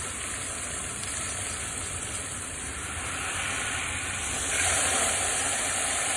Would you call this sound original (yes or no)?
no